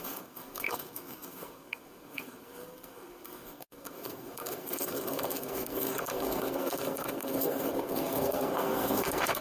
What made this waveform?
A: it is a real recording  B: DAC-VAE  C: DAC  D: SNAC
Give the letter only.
D